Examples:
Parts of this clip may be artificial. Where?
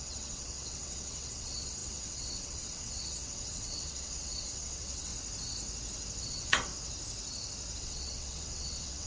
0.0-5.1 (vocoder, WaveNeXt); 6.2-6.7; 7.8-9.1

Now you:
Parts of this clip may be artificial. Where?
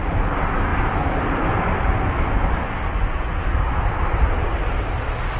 none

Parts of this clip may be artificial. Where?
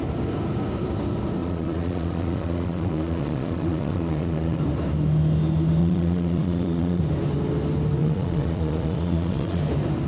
1.4-4.6 (vocoder, Vocos); 5.8-7.0; 8.0-9.6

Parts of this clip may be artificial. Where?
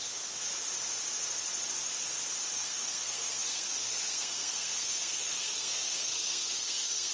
2.5-7.1 (codec, SNAC)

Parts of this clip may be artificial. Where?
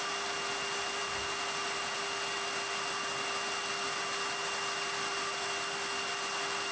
none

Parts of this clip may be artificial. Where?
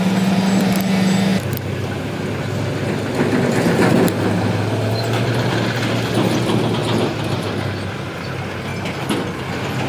none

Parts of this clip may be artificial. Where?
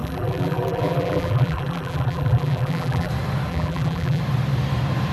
0.0-3.1 (vocoder, BigVGAN v2); 3.5-4.2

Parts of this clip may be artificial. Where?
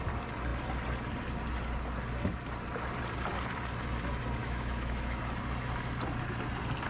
4.4-5.2 (autoencoder, DAC-VAE)